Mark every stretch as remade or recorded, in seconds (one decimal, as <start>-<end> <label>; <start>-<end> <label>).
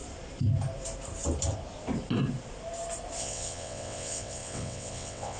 0.0-3.2 recorded; 3.2-5.4 remade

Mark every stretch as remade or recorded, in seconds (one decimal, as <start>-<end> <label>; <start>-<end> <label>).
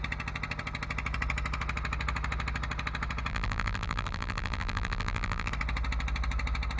0.0-3.3 recorded; 3.3-5.5 remade; 5.5-6.8 recorded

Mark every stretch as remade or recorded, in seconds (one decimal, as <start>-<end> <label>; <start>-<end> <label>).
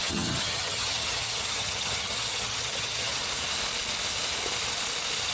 0.0-3.2 remade; 3.2-5.3 recorded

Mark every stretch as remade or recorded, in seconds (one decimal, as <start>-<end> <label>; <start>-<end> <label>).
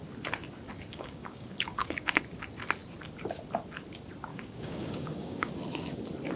0.0-0.9 recorded; 0.9-2.2 remade; 2.2-4.3 recorded; 4.3-5.5 remade; 5.5-6.4 recorded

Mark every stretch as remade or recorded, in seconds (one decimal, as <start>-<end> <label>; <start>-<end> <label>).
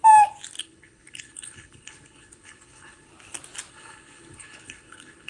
0.0-0.6 recorded; 0.6-3.1 remade; 3.1-3.7 recorded; 3.7-5.3 remade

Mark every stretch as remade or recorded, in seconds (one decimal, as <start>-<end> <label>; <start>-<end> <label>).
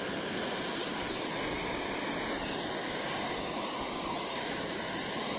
0.0-0.8 recorded; 0.8-1.3 remade; 1.3-2.8 recorded; 2.8-4.8 remade; 4.8-5.4 recorded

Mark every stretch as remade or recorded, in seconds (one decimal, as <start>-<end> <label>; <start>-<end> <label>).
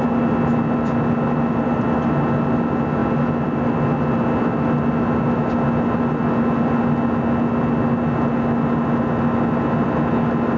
0.0-10.6 recorded